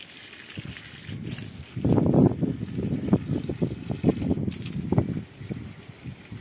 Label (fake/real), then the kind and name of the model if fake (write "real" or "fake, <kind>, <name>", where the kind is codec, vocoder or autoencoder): real